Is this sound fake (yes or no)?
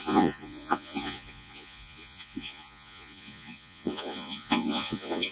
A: yes